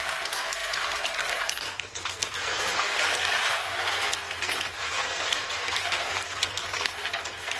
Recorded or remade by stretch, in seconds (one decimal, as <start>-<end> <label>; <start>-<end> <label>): 0.0-7.6 remade